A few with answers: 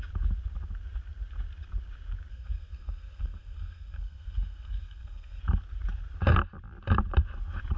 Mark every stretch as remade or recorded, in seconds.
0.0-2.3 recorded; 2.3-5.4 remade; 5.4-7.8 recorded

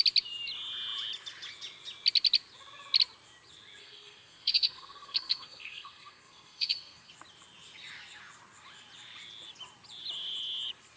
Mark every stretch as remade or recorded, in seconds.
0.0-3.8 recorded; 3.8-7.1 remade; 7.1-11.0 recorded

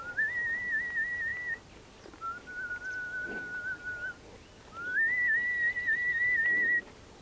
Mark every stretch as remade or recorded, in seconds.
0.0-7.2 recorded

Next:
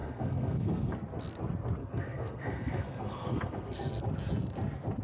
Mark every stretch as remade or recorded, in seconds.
0.0-0.9 remade; 0.9-1.8 recorded; 1.8-4.0 remade; 4.0-5.0 recorded